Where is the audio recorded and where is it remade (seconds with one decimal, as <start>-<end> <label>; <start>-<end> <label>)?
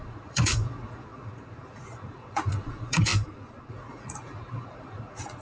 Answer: 0.0-3.1 remade; 3.1-3.7 recorded; 3.7-5.4 remade